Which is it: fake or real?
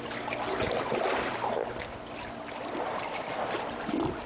real